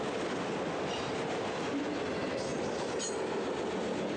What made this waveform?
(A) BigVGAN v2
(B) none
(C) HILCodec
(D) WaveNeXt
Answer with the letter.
B